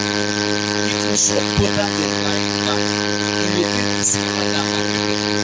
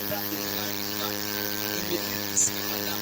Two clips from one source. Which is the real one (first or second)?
first